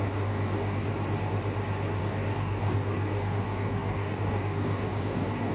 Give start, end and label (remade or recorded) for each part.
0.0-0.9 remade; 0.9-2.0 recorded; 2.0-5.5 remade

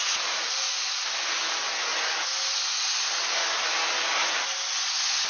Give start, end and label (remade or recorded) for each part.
0.0-5.3 recorded

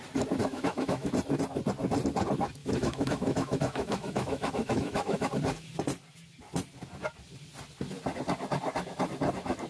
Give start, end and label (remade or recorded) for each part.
0.0-0.4 recorded; 0.4-1.1 remade; 1.1-2.6 recorded; 2.6-5.3 remade; 5.3-9.7 recorded

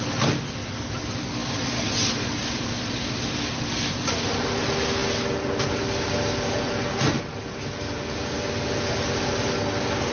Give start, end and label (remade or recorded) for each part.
0.0-10.1 recorded